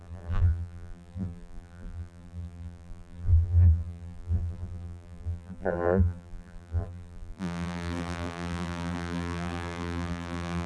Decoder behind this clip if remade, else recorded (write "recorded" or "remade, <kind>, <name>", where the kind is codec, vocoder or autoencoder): remade, vocoder, BigVGAN v2